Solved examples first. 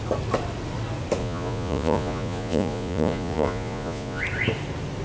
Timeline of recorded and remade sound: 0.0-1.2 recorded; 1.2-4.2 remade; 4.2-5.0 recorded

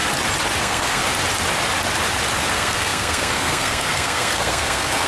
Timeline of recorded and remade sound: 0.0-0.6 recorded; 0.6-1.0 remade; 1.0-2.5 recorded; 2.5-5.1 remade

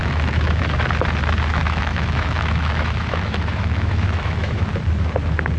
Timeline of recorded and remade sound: 0.0-0.6 remade; 0.6-1.6 recorded; 1.6-4.7 remade; 4.7-5.6 recorded

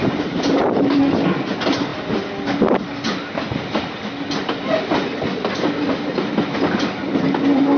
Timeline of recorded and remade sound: 0.0-1.0 remade; 1.0-7.8 recorded